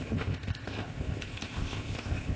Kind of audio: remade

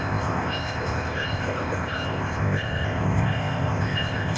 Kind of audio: remade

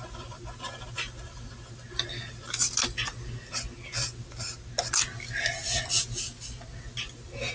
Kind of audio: recorded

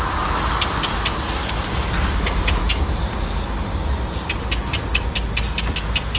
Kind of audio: recorded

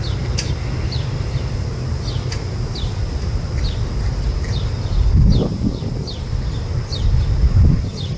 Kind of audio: recorded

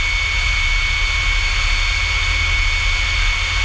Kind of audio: recorded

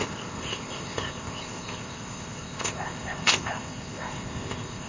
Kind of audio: remade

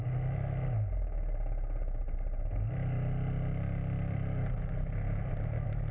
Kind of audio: recorded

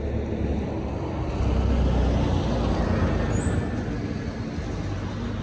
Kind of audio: recorded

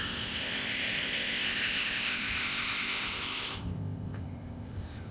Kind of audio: remade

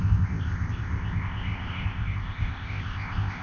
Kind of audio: remade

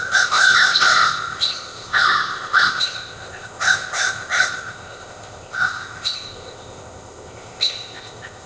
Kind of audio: remade